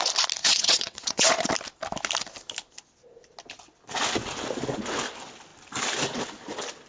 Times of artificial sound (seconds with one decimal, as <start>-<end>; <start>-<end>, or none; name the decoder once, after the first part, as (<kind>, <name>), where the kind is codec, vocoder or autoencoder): 0.4-1.5 (vocoder, WaveNeXt)